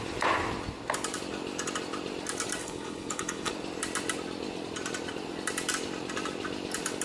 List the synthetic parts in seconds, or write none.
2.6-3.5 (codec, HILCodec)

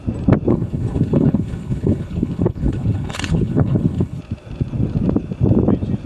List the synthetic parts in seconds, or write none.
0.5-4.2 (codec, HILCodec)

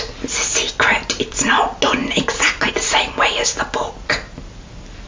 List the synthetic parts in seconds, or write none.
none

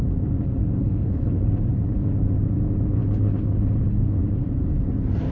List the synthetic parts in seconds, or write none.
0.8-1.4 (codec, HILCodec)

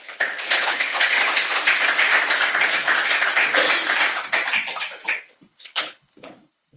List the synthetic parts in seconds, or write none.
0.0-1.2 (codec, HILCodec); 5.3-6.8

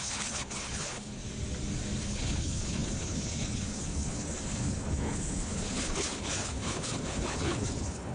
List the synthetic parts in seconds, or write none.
0.0-1.2 (codec, HILCodec); 2.0-8.1

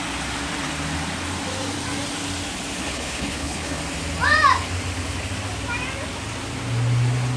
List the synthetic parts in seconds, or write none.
2.8-3.8 (codec, HILCodec)

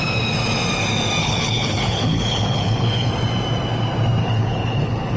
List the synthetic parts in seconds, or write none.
1.2-3.1 (codec, HILCodec); 4.2-5.2